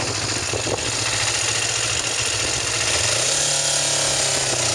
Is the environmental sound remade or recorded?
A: recorded